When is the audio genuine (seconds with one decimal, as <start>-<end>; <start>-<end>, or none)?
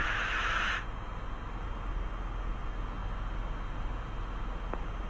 0.7-5.1